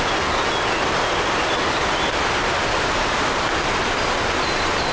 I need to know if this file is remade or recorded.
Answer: recorded